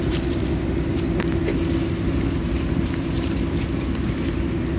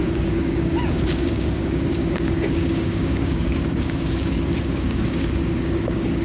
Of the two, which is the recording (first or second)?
first